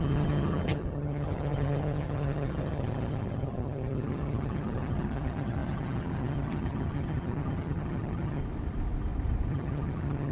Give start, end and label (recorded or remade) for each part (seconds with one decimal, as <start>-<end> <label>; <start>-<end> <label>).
0.0-8.4 remade; 8.4-9.5 recorded; 9.5-10.3 remade